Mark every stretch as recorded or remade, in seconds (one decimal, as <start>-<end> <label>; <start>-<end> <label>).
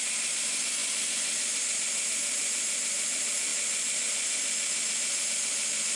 0.0-0.8 recorded; 0.8-1.6 remade; 1.6-6.0 recorded